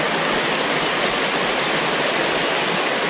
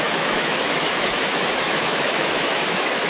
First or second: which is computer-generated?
second